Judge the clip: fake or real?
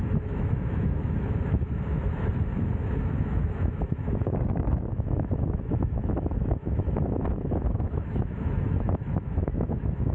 fake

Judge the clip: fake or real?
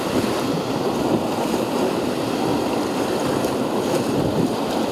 real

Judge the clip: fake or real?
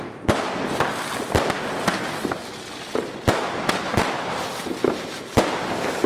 real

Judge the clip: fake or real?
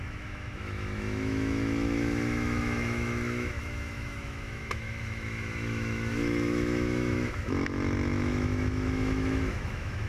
fake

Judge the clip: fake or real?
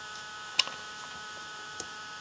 fake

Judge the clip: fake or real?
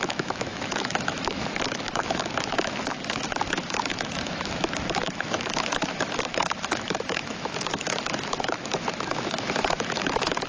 fake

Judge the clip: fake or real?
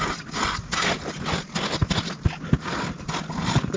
real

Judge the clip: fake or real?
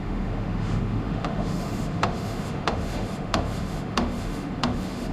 fake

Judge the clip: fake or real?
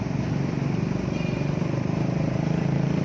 real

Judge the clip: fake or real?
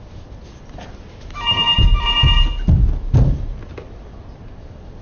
real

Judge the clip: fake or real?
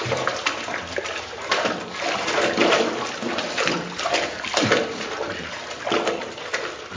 real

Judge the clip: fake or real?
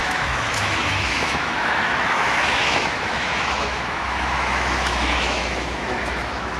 fake